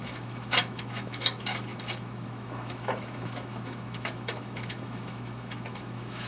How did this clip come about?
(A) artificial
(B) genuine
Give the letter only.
A